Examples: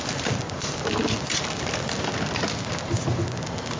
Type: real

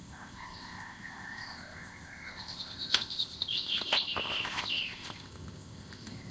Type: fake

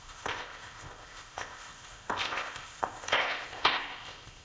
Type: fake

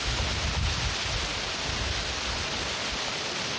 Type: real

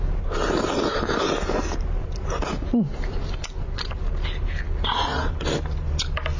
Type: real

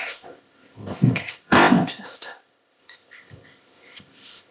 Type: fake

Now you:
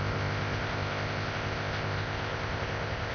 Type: fake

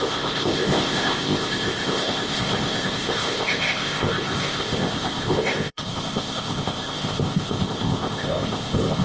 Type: fake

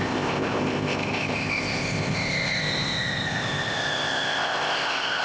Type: fake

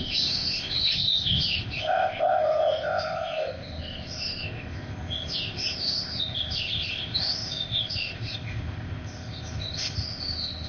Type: fake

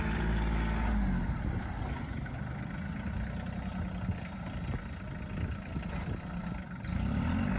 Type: real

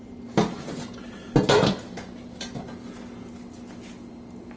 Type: real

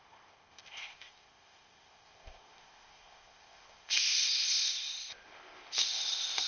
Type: fake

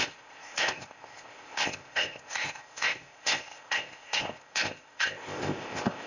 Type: fake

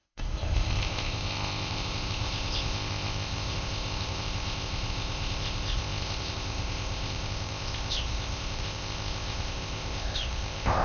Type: fake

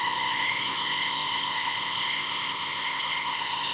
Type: fake